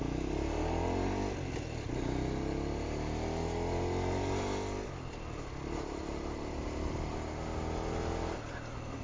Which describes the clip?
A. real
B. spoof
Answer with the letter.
A